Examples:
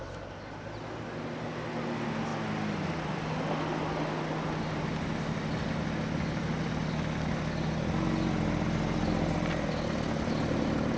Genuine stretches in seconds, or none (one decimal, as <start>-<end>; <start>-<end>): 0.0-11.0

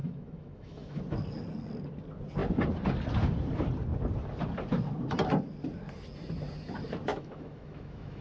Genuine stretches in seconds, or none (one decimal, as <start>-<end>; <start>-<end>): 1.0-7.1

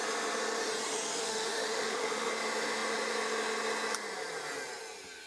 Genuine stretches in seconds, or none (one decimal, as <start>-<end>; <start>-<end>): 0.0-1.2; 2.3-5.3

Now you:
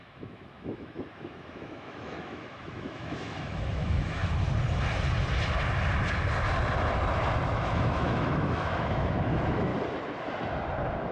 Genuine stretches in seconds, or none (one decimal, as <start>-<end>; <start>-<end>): 4.2-7.5; 9.7-11.1